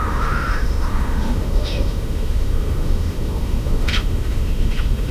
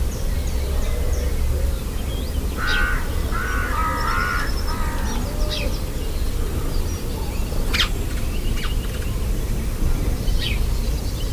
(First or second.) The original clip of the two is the second